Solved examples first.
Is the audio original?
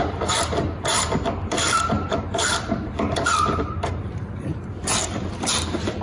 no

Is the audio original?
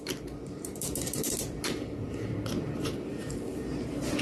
no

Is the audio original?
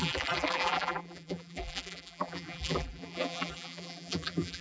no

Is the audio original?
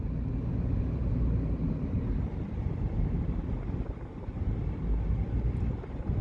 no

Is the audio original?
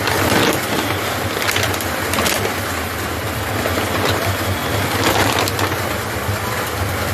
no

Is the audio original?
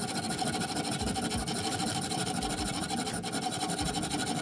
no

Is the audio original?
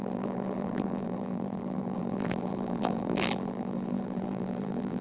no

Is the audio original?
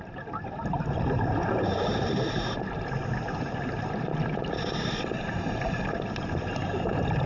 no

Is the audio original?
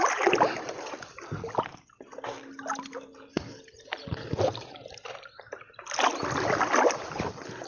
yes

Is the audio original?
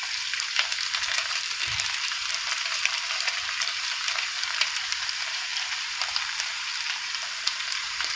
no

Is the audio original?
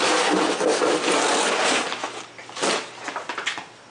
yes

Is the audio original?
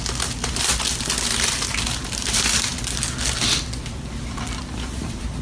yes